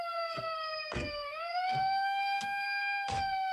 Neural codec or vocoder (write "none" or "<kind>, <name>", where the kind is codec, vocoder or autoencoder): codec, SNAC